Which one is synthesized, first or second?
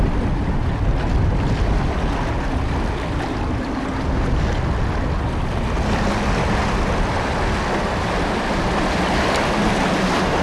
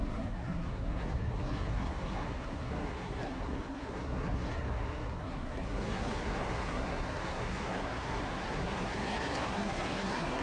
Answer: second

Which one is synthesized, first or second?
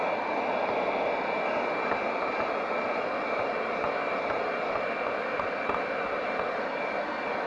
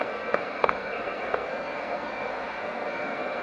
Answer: second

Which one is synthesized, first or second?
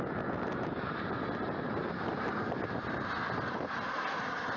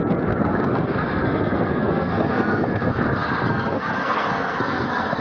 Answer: second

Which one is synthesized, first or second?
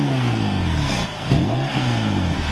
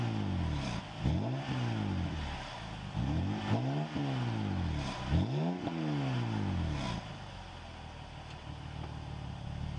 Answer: first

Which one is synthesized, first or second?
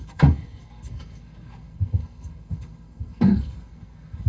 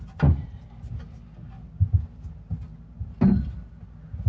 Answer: first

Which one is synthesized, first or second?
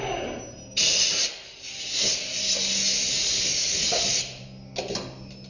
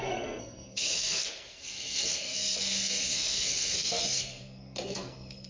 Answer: second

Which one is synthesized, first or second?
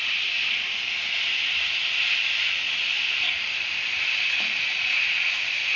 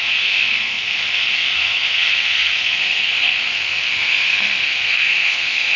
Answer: second